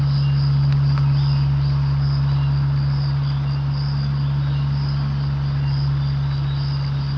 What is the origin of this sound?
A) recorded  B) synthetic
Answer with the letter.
A